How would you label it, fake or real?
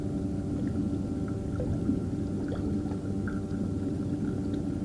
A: real